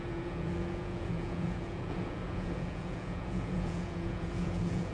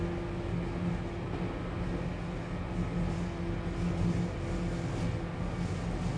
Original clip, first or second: second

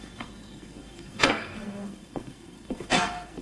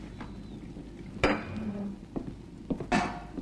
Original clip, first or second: second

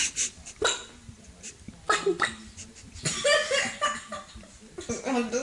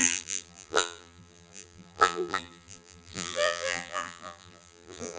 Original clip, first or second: first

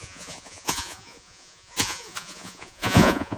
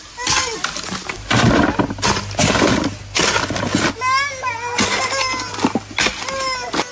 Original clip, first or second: second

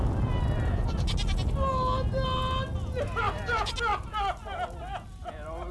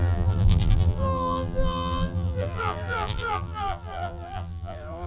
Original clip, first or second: first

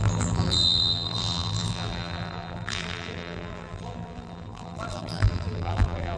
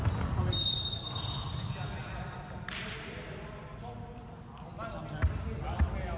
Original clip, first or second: second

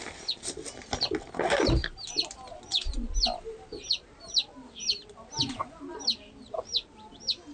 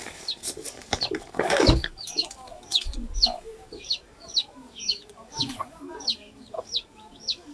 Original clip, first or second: first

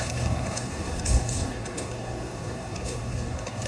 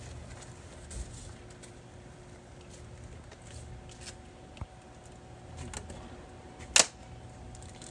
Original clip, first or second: second